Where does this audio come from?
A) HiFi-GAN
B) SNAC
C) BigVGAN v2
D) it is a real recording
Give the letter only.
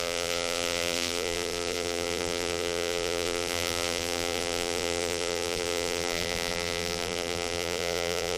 C